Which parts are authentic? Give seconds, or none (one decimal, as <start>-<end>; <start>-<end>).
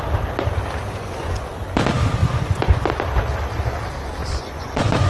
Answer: 0.0-1.0; 1.5-2.2; 2.9-4.2